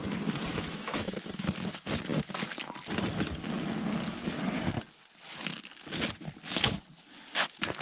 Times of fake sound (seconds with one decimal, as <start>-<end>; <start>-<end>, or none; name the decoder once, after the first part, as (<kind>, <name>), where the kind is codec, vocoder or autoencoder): 0.5-1.3 (autoencoder, DAC-VAE)